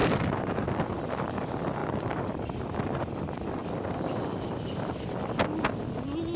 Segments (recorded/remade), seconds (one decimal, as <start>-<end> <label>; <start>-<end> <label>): 0.0-6.4 recorded